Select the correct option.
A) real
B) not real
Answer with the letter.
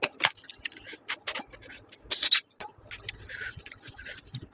A